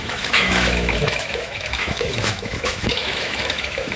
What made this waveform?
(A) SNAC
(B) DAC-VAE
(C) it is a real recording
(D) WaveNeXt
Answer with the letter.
B